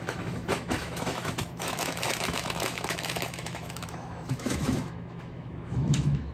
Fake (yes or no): yes